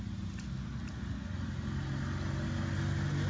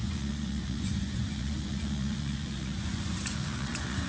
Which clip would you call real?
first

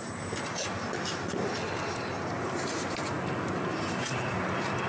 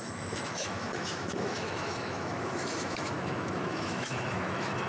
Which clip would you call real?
first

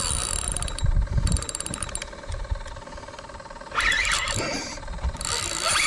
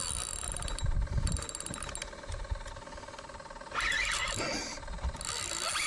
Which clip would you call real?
second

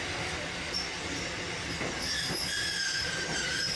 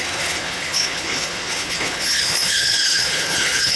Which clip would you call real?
first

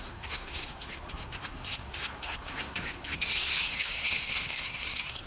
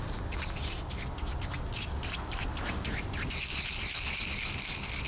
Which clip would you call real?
second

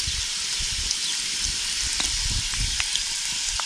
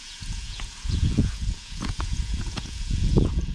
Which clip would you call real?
first